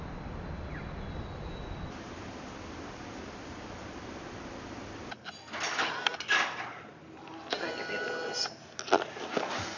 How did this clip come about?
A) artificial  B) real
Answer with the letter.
B